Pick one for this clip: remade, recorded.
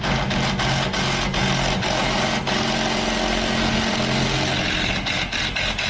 recorded